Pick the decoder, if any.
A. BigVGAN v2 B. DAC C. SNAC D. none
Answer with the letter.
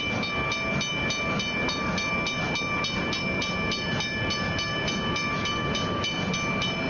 D